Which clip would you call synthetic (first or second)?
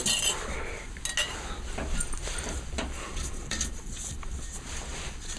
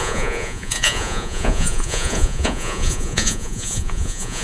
second